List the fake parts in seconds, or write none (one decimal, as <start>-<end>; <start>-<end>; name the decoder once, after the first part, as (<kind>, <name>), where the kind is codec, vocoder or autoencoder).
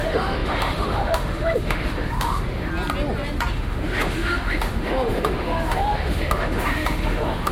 0.0-2.7 (autoencoder, DAC-VAE); 3.5-7.5